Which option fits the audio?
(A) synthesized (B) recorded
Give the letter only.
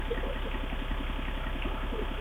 B